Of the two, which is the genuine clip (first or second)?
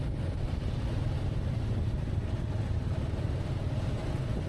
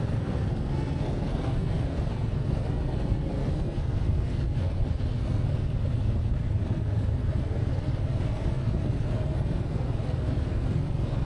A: first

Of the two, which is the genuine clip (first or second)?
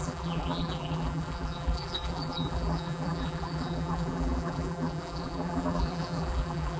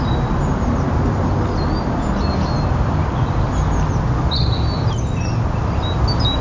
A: second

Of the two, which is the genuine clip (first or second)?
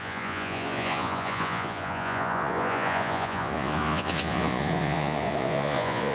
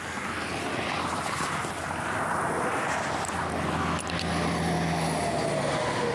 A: second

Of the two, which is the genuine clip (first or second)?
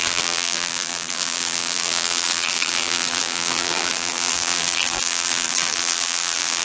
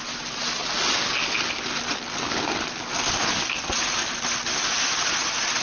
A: second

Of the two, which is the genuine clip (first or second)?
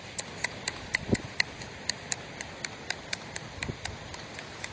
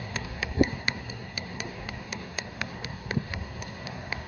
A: first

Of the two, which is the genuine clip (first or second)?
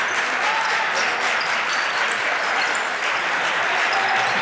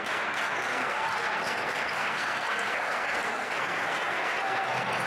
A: first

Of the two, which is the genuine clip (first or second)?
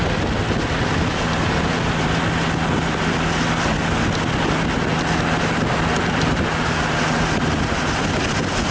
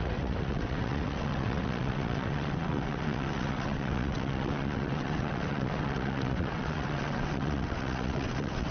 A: first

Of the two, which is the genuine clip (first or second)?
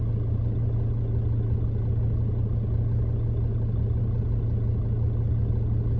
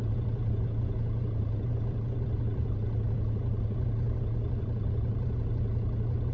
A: first